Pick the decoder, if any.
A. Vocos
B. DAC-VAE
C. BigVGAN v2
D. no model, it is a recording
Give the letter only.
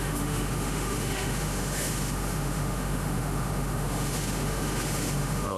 B